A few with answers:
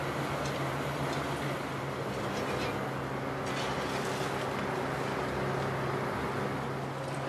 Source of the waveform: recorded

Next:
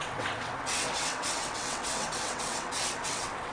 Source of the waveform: remade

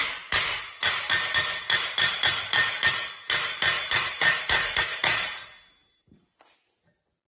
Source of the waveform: recorded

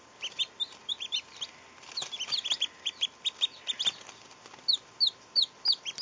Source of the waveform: recorded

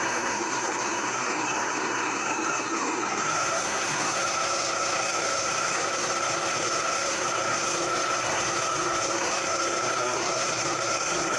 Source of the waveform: remade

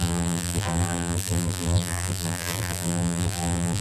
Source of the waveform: remade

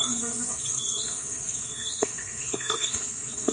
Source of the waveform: remade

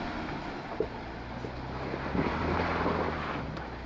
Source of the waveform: recorded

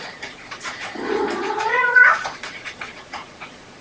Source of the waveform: remade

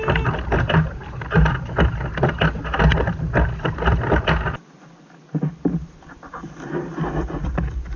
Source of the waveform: recorded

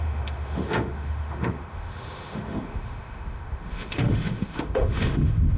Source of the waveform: remade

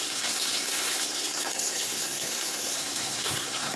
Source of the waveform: remade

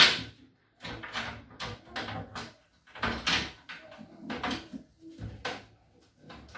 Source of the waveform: recorded